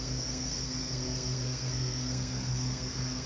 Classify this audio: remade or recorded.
remade